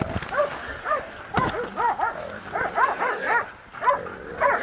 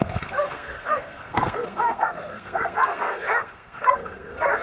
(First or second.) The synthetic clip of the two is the second